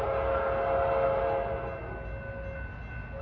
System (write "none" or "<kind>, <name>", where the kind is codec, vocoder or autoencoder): none